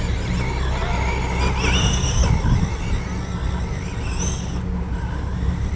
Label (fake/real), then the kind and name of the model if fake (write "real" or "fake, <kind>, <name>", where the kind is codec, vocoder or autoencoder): real